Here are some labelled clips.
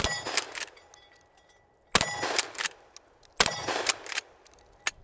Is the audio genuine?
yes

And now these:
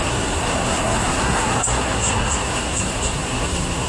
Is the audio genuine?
no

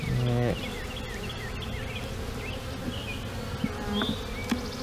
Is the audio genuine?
yes